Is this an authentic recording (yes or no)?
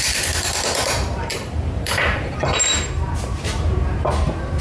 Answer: no